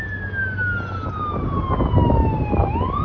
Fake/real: real